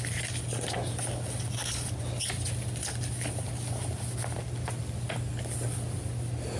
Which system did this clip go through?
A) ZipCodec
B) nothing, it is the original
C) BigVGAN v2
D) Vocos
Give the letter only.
B